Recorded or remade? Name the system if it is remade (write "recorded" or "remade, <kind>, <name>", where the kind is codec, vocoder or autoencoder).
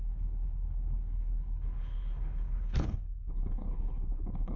remade, codec, HILCodec